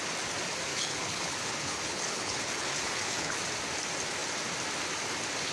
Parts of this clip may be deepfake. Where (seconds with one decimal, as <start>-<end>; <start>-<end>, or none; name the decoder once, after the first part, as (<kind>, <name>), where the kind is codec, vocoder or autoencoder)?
0.7-3.4 (codec, HILCodec)